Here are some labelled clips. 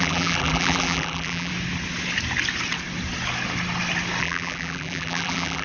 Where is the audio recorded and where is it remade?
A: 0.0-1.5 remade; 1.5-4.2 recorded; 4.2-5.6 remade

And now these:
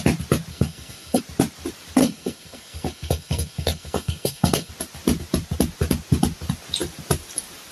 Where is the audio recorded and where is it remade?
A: 0.0-0.5 recorded; 0.5-1.2 remade; 1.2-2.0 recorded; 2.0-4.7 remade; 4.7-7.7 recorded